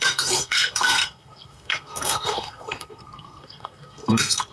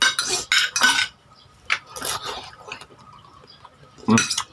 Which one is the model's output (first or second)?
first